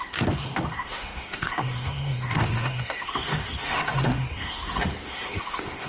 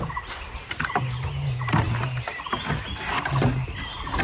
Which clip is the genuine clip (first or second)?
second